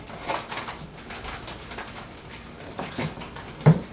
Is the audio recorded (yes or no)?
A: yes